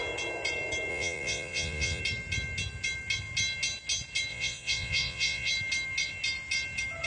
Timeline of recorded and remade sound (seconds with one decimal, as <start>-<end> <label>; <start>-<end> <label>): 0.0-0.9 recorded; 0.9-2.0 remade; 2.0-4.3 recorded; 4.3-5.5 remade; 5.5-7.1 recorded